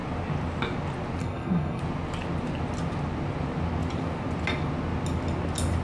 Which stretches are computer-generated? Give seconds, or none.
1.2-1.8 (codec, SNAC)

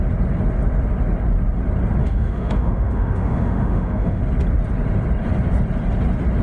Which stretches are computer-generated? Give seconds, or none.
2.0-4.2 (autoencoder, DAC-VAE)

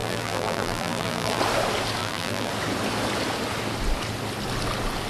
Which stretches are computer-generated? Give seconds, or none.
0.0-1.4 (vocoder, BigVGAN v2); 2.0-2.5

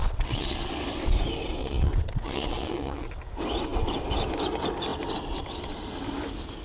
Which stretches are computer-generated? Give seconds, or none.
0.0-0.7 (vocoder, WaveNeXt); 1.6-3.1